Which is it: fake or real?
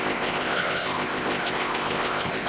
fake